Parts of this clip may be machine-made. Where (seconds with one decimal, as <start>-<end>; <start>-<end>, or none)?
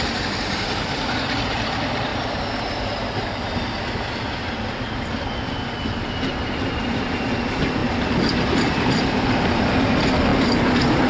0.0-2.1; 4.1-11.1